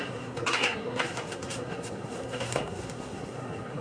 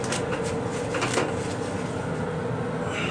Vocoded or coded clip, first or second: first